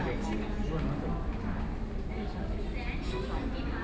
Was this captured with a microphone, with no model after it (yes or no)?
yes